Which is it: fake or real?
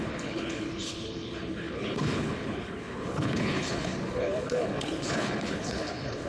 fake